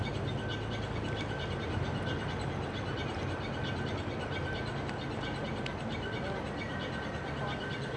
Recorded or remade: recorded